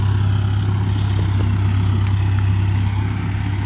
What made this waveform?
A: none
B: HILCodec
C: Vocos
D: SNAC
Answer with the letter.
A